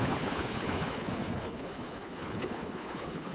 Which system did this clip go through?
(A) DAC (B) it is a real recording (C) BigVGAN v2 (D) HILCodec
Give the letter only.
D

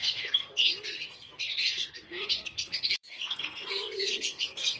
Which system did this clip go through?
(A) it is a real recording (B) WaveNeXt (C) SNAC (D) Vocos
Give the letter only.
C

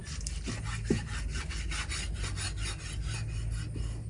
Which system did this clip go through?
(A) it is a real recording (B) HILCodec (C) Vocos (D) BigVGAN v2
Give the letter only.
A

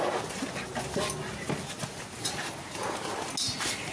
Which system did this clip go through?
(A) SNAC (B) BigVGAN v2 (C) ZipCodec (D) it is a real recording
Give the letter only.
D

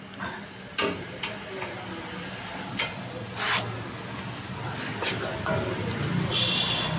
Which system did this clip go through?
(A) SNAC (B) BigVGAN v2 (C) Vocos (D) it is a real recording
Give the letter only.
D